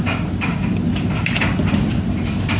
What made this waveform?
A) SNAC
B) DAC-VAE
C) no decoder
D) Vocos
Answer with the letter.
C